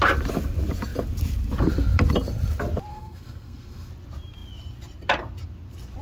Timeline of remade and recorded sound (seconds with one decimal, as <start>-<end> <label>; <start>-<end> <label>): 0.0-2.9 recorded; 2.9-3.9 remade; 3.9-6.0 recorded